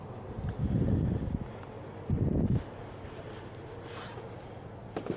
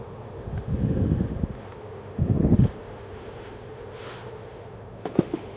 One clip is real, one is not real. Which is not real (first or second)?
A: second